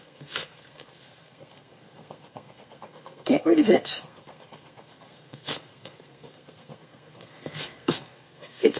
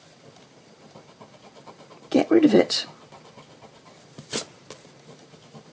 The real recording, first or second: second